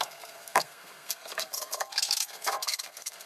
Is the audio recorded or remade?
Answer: remade